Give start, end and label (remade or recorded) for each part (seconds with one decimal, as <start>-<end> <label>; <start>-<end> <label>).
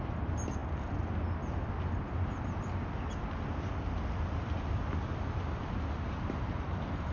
0.0-7.1 recorded